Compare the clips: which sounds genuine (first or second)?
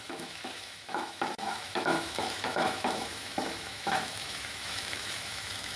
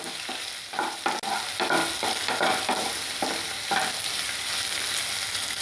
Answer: second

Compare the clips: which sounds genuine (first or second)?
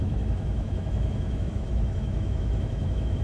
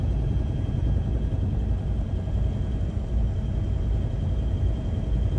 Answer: second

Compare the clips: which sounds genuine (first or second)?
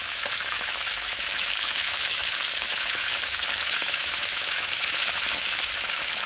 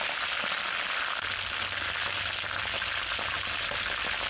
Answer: second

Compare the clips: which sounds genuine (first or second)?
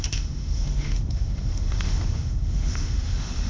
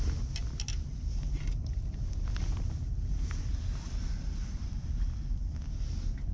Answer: second